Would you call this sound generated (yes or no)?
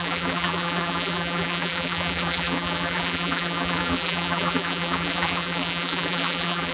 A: yes